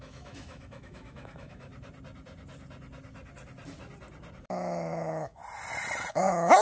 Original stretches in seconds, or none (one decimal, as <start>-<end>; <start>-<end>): 1.7-4.5; 5.4-6.1